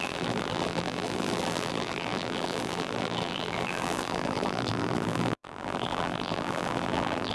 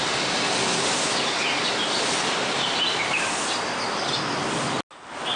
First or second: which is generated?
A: first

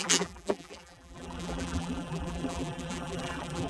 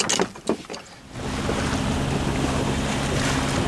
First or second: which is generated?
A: first